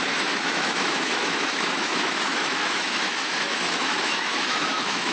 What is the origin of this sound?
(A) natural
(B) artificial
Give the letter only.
B